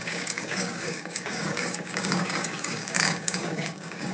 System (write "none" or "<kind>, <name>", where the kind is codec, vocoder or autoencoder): codec, DAC